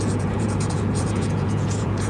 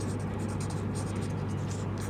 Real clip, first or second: second